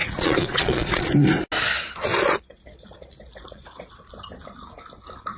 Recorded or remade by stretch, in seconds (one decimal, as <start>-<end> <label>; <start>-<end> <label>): 0.0-1.1 remade; 1.1-2.1 recorded; 2.1-3.9 remade; 3.9-5.4 recorded

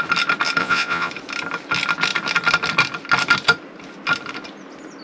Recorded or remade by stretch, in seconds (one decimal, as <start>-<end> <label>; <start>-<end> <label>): 0.0-0.6 recorded; 0.6-1.1 remade; 1.1-5.0 recorded

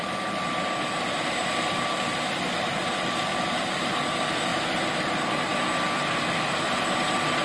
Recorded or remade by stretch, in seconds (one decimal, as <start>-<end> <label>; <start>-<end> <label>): 0.0-7.4 recorded

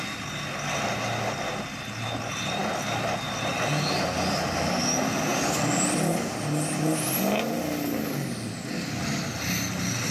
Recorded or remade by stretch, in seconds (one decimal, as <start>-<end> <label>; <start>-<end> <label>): 0.0-10.1 recorded

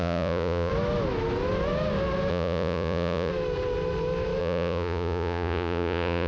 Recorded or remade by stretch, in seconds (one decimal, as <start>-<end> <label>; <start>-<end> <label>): 0.0-0.7 remade; 0.7-2.3 recorded; 2.3-3.3 remade; 3.3-4.4 recorded; 4.4-6.3 remade

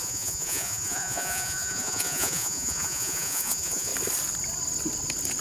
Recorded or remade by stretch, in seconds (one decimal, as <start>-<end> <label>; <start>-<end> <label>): 0.0-3.9 remade; 3.9-5.4 recorded